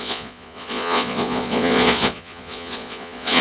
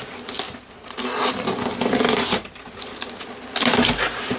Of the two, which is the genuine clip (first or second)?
second